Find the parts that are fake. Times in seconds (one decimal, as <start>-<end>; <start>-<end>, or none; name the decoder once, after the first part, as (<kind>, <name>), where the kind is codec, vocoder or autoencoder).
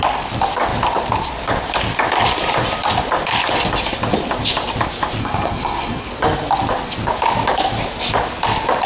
5.2-6.1 (codec, SNAC)